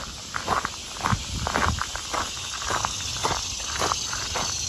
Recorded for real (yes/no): yes